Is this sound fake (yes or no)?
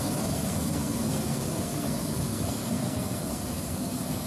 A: yes